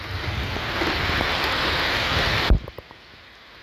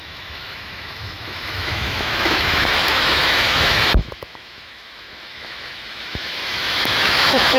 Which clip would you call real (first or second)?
first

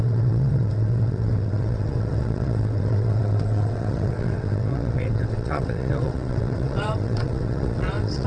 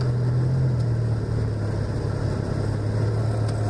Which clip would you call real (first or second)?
second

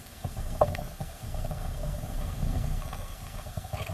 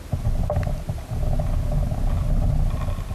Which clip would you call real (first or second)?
second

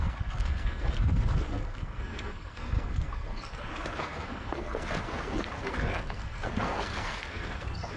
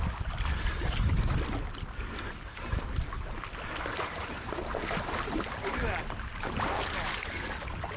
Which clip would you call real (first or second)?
second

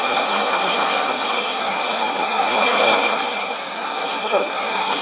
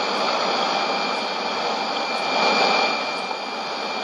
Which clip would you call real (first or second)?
second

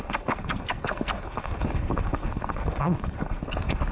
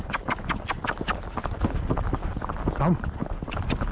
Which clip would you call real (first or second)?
second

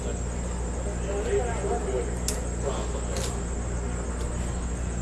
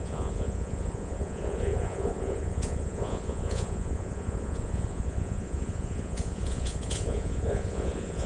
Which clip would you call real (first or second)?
first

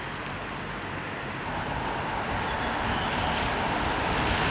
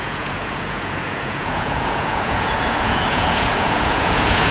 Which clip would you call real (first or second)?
first